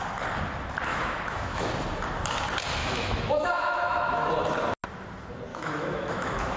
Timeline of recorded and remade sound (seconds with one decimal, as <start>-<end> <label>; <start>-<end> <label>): 0.0-0.9 recorded; 0.9-1.7 remade; 1.7-2.8 recorded; 2.8-4.3 remade; 4.3-5.5 recorded; 5.5-6.6 remade

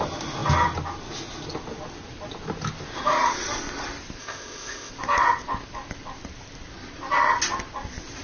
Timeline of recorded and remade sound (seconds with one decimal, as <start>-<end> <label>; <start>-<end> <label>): 0.0-4.2 recorded; 4.2-4.9 remade; 4.9-8.2 recorded

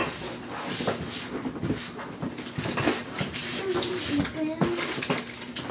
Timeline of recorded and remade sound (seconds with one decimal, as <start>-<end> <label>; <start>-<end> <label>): 0.0-3.0 recorded; 3.0-3.6 remade; 3.6-5.7 recorded

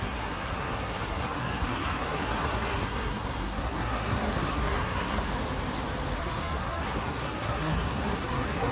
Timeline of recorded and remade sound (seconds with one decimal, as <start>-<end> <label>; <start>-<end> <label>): 0.0-5.3 remade; 5.3-6.2 recorded; 6.2-8.7 remade

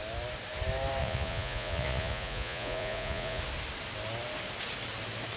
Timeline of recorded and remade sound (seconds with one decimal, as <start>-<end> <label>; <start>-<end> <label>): 0.0-1.0 recorded; 1.0-3.4 remade; 3.4-5.4 recorded

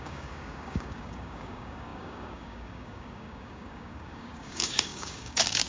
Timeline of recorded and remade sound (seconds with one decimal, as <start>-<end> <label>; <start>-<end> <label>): 0.0-5.7 remade

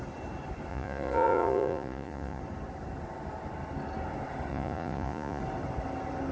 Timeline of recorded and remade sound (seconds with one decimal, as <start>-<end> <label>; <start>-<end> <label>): 0.0-0.7 recorded; 0.7-2.4 remade; 2.4-4.5 recorded; 4.5-5.4 remade; 5.4-6.3 recorded

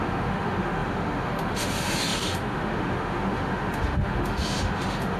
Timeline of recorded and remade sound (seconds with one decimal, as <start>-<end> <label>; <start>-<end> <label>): 0.0-5.2 remade